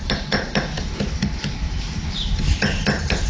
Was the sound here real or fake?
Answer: real